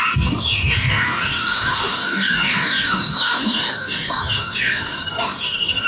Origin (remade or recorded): remade